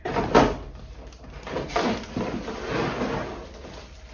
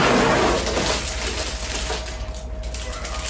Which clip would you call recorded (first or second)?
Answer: second